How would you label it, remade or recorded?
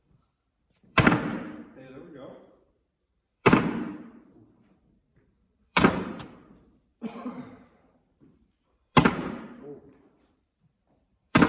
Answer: remade